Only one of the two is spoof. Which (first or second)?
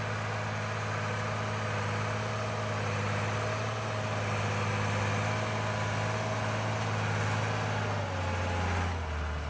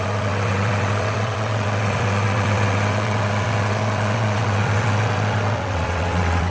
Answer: second